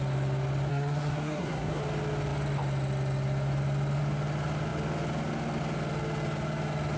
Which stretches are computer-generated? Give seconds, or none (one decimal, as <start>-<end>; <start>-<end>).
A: 0.7-1.8